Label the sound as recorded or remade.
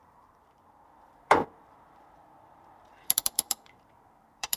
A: remade